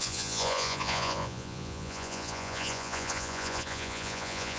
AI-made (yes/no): yes